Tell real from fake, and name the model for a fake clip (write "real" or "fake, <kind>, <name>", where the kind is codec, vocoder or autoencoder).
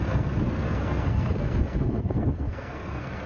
fake, codec, SNAC